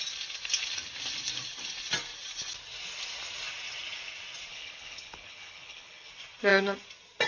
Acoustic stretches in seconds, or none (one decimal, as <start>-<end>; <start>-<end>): 0.0-4.5; 6.1-7.3